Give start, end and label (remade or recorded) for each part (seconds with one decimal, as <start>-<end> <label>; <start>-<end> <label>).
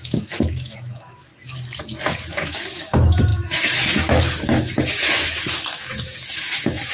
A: 0.0-1.3 remade; 1.3-2.3 recorded; 2.3-6.9 remade